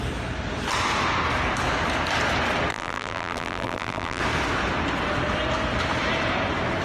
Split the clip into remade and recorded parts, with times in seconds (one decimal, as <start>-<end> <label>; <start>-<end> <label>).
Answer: 0.0-2.7 recorded; 2.7-4.2 remade; 4.2-6.8 recorded